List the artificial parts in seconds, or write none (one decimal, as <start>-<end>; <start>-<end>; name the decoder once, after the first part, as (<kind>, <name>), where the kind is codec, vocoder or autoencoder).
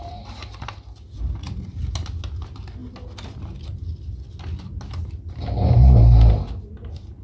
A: none